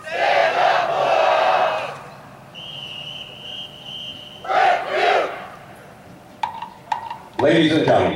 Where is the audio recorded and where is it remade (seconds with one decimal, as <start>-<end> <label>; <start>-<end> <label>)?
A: 0.0-0.4 recorded; 0.4-3.1 remade; 3.1-4.1 recorded; 4.1-8.2 remade

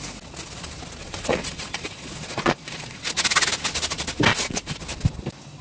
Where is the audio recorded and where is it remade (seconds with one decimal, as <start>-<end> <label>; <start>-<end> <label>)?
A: 0.0-1.0 recorded; 1.0-3.0 remade; 3.0-4.3 recorded; 4.3-4.8 remade; 4.8-5.6 recorded

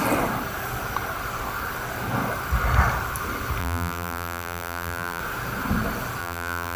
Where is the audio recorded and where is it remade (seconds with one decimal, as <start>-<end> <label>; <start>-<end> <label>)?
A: 0.0-3.6 recorded; 3.6-5.2 remade; 5.2-6.2 recorded; 6.2-6.8 remade

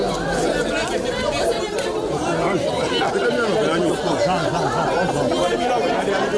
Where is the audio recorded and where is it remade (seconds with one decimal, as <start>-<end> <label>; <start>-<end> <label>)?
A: 0.0-6.4 recorded